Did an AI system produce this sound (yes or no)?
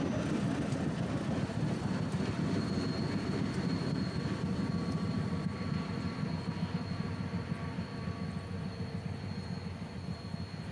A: no